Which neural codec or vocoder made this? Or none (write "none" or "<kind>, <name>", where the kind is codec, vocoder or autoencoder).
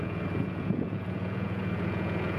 vocoder, Vocos